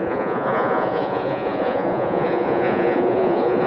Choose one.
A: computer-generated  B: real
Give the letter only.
A